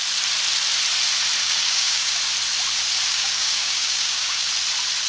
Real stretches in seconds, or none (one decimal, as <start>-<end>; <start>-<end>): 0.0-1.4; 2.2-3.1; 4.5-5.1